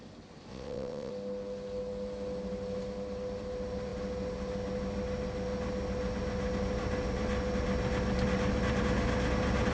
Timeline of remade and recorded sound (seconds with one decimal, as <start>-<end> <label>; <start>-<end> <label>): 0.0-0.5 recorded; 0.5-1.1 remade; 1.1-9.7 recorded